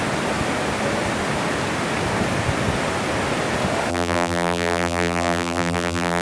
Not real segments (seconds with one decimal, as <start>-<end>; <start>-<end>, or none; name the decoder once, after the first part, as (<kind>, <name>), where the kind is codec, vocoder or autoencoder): 3.9-6.2 (vocoder, BigVGAN v2)